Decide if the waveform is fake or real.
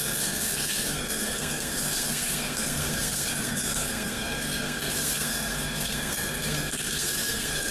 fake